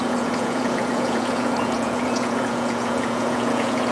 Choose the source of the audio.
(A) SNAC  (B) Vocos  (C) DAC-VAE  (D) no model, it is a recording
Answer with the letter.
B